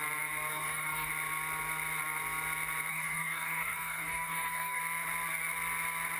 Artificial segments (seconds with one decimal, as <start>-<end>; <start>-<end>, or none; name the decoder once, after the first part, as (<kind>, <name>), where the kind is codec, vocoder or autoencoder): 0.5-1.1 (codec, DAC); 2.9-4.8